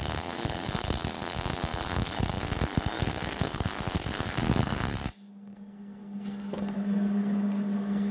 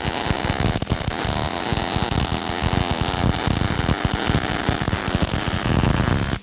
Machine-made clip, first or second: first